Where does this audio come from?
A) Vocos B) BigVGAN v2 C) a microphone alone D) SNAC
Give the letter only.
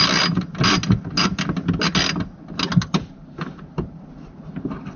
C